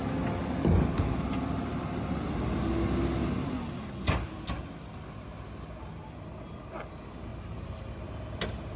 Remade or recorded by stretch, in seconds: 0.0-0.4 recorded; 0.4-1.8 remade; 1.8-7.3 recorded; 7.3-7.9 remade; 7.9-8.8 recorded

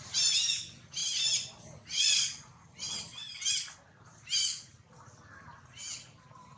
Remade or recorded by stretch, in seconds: 0.0-6.6 recorded

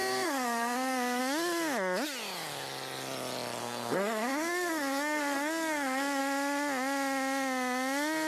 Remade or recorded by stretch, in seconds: 0.0-1.2 remade; 1.2-3.6 recorded; 3.6-6.2 remade; 6.2-8.3 recorded